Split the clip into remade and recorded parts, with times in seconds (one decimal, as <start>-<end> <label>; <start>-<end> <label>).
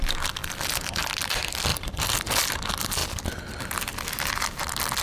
0.0-0.4 recorded; 0.4-1.1 remade; 1.1-1.7 recorded; 1.7-2.5 remade; 2.5-5.0 recorded